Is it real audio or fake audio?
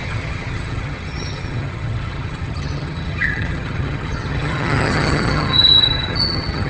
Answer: fake